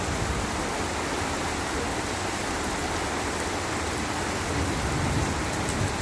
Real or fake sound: real